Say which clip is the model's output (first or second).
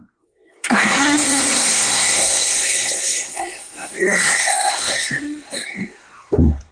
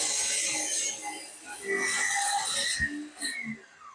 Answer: first